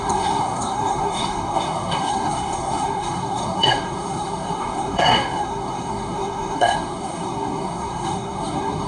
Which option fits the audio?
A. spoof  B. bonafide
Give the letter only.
A